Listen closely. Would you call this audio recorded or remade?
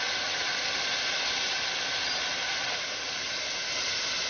recorded